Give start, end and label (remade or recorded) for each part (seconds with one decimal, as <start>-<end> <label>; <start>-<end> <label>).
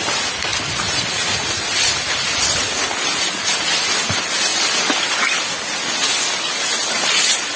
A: 0.0-0.5 remade; 0.5-1.8 recorded; 1.8-4.5 remade; 4.5-7.6 recorded